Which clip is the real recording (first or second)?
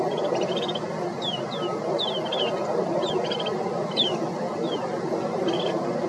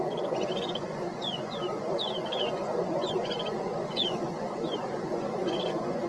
first